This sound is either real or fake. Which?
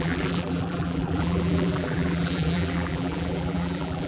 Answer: fake